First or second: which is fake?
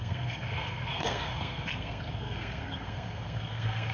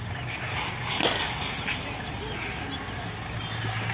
first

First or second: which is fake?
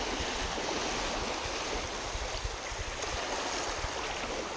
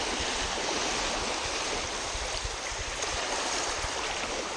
second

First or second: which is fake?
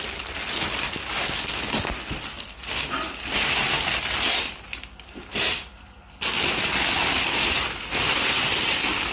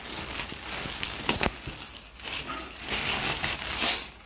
second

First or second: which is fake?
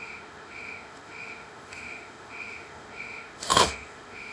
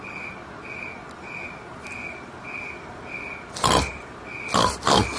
first